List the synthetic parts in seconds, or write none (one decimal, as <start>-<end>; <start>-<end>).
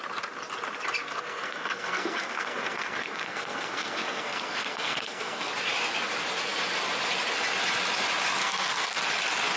1.0-5.5; 8.4-9.0